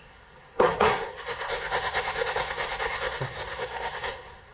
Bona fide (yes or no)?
no